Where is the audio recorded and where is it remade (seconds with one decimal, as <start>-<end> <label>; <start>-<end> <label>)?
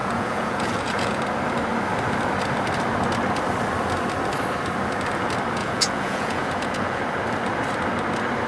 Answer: 0.0-1.2 remade; 1.2-5.6 recorded; 5.6-7.0 remade; 7.0-8.5 recorded